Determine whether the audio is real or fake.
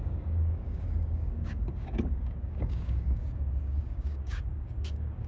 fake